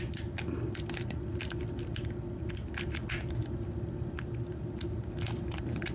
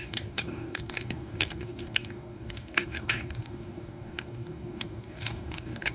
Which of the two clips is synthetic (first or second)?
second